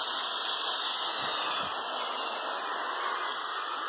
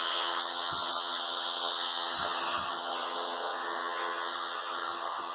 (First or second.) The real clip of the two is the first